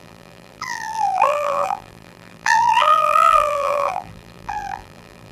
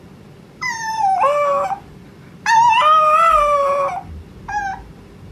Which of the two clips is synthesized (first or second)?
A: first